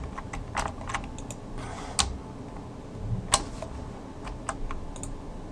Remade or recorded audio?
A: recorded